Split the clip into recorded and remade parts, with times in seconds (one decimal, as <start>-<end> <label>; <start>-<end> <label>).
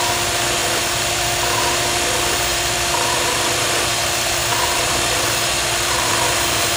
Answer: 0.0-0.6 recorded; 0.6-1.1 remade; 1.1-2.5 recorded; 2.5-3.7 remade; 3.7-4.4 recorded; 4.4-5.0 remade; 5.0-6.8 recorded